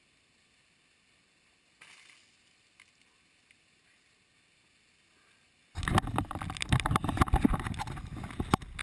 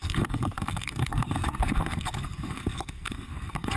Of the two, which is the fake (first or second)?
second